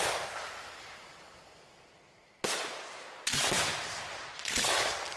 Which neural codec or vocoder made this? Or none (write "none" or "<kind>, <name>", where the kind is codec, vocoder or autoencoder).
none